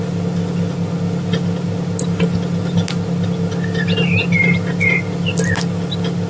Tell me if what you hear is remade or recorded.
recorded